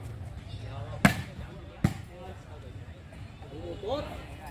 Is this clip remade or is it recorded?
recorded